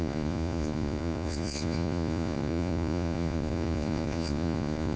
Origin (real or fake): fake